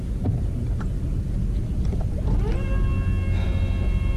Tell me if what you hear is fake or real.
real